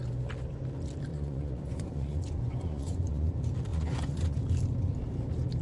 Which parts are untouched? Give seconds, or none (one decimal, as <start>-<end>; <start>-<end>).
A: 0.0-1.1; 3.3-3.7; 4.4-5.6